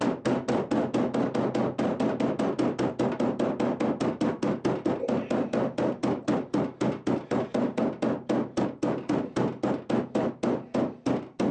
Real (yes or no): yes